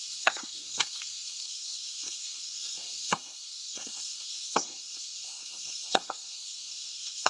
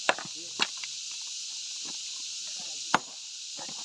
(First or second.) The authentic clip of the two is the second